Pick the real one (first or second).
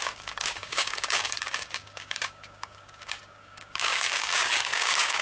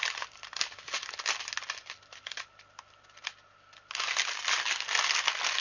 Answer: second